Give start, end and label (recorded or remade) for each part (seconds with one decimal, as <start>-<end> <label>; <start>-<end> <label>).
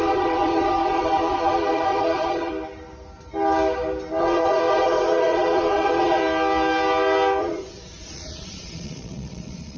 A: 0.0-2.5 remade; 2.5-4.2 recorded; 4.2-6.2 remade; 6.2-7.4 recorded; 7.4-9.8 remade